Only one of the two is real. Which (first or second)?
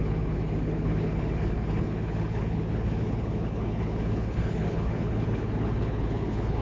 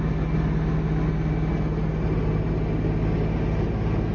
second